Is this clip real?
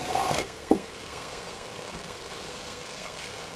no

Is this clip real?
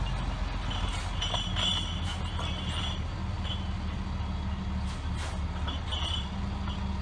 yes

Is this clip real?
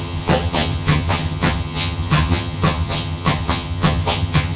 no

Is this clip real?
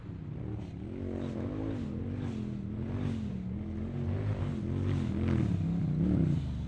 yes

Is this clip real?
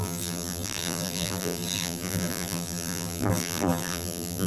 no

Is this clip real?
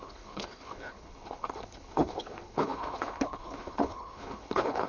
no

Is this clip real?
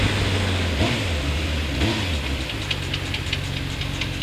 yes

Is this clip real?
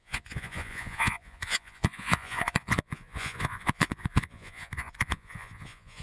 no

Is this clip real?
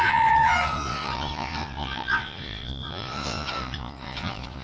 no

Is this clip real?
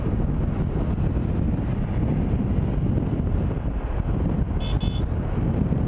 yes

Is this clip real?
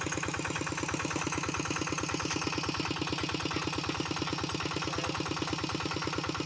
yes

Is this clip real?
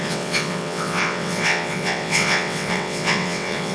no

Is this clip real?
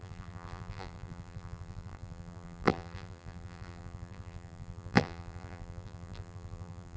no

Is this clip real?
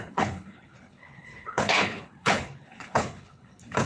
no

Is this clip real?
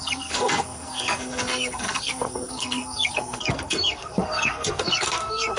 no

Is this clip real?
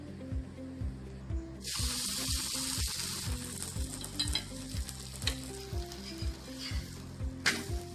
yes